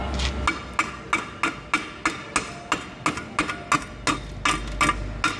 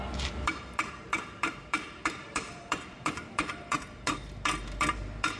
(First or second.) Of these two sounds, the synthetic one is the second